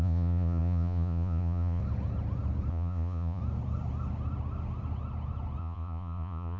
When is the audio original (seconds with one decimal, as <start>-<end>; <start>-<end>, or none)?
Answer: 1.8-2.7; 3.4-5.6